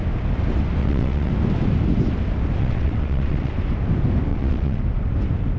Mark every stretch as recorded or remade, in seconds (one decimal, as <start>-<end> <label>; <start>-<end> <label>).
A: 0.0-0.8 recorded; 0.8-1.3 remade; 1.3-2.6 recorded; 2.6-3.5 remade; 3.5-4.3 recorded; 4.3-4.8 remade; 4.8-5.6 recorded